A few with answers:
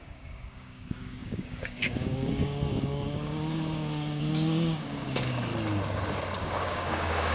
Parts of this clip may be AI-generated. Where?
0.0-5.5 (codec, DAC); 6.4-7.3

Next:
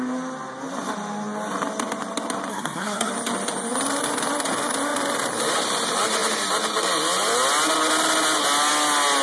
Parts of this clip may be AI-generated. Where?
2.5-3.1 (codec, SNAC)

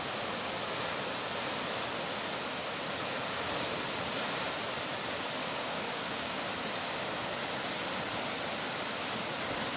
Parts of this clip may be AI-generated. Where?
5.4-6.4 (codec, DAC)

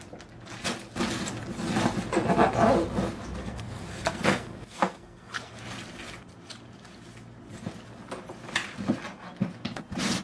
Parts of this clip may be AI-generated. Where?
3.4-5.6 (codec, SNAC)

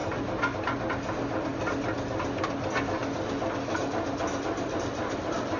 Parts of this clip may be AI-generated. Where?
none

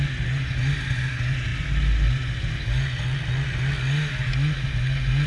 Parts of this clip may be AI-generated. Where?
none